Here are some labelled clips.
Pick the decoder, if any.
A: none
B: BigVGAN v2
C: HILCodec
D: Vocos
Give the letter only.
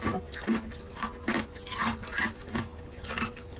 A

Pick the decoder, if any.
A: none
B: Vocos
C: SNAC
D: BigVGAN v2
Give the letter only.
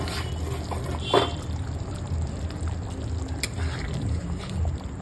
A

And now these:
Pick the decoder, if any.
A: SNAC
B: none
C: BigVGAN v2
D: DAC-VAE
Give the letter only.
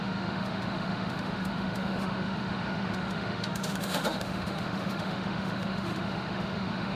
D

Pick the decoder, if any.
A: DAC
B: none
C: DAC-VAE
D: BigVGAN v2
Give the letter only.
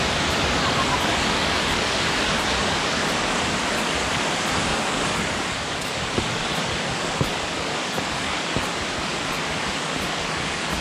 A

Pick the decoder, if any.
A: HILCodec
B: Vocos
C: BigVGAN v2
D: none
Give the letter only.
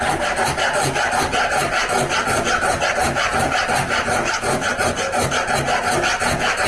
D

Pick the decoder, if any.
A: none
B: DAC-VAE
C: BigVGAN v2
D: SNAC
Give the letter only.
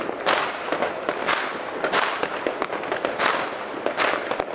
A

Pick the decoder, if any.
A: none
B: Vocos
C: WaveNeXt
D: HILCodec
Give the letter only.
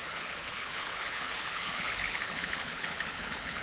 D